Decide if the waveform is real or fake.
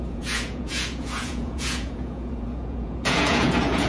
fake